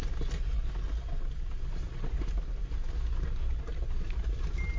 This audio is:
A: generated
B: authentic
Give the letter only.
B